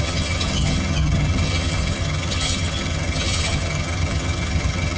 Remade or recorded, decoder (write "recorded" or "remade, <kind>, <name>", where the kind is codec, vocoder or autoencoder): remade, vocoder, HiFi-GAN